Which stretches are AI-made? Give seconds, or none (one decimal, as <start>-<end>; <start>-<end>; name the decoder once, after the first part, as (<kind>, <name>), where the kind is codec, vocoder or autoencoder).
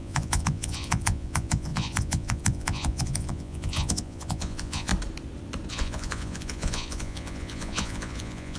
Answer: 0.0-4.9 (vocoder, Vocos); 5.7-8.6